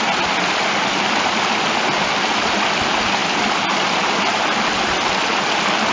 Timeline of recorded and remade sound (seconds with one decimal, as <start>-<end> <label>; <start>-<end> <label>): 0.0-5.9 recorded